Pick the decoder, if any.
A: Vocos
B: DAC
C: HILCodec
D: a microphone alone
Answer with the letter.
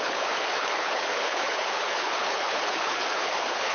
C